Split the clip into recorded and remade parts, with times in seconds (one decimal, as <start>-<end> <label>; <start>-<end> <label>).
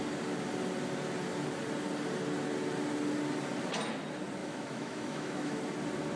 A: 0.0-4.4 recorded; 4.4-5.6 remade; 5.6-6.2 recorded